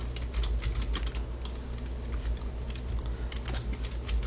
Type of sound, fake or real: real